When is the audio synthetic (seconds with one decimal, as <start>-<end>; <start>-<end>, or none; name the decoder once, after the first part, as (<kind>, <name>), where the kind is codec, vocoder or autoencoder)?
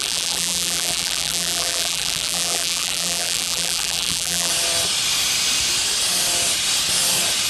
0.0-4.5 (vocoder, BigVGAN v2)